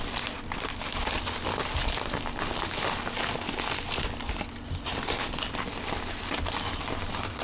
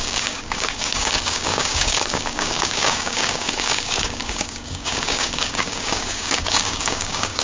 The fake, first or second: second